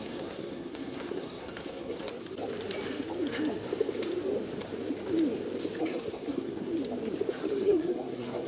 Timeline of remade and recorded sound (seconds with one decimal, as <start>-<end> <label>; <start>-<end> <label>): 0.0-2.1 remade; 2.1-5.8 recorded; 5.8-6.7 remade; 6.7-7.3 recorded; 7.3-8.5 remade